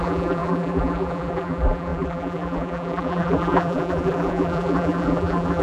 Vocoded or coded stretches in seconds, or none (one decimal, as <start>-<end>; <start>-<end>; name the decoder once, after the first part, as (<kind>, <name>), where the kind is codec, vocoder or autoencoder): 0.0-5.6 (vocoder, BigVGAN v2)